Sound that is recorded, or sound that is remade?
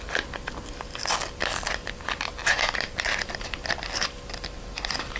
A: recorded